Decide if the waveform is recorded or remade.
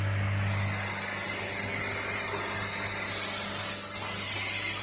recorded